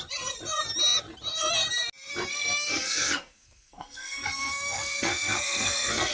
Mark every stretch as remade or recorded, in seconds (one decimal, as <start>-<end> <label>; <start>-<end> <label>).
0.0-2.3 recorded; 2.3-6.1 remade